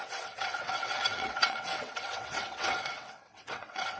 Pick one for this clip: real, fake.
fake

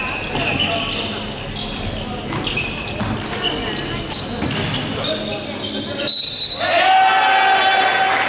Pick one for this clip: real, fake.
real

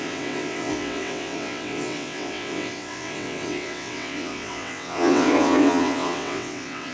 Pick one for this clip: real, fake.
fake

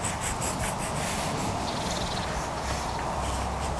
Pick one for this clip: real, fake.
real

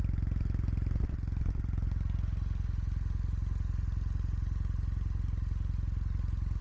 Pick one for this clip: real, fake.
real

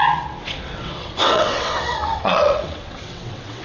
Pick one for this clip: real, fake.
fake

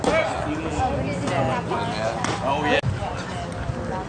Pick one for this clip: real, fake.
real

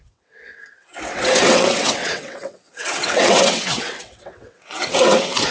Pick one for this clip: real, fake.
fake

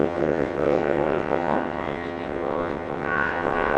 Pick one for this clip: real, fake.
fake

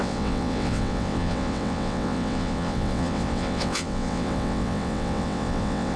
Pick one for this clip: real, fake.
fake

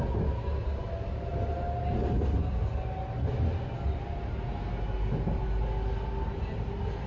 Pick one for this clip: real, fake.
real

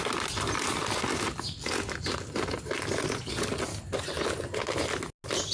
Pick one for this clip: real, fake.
real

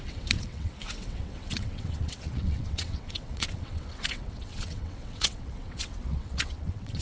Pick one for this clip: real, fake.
fake